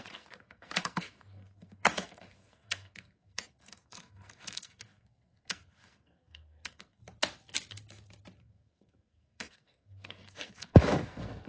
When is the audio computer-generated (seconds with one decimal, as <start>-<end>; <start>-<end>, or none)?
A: 0.0-7.0; 8.4-11.5